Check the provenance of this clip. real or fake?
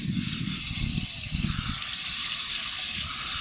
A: real